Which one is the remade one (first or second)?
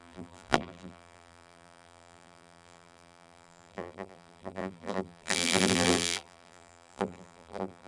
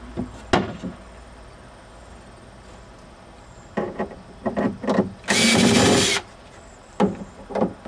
first